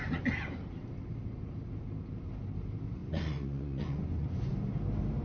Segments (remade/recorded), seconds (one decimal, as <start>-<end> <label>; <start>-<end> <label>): 0.0-3.0 recorded; 3.0-4.5 remade; 4.5-5.2 recorded